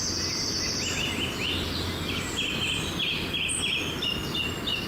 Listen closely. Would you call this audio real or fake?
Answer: fake